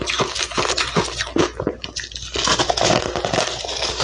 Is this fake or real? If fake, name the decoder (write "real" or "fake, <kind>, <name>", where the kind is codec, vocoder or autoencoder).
real